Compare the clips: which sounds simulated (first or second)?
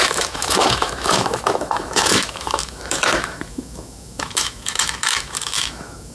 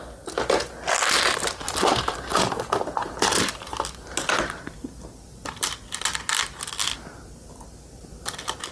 first